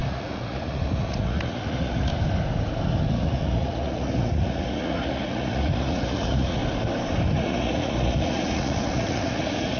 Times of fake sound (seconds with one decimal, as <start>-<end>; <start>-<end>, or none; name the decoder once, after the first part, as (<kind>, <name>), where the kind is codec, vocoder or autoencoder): 0.0-2.1 (vocoder, Vocos); 3.1-6.6; 7.3-9.8